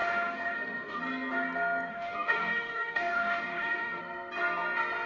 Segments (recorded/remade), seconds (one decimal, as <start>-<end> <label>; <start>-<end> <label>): 0.0-1.0 remade; 1.0-1.9 recorded; 1.9-4.0 remade; 4.0-5.1 recorded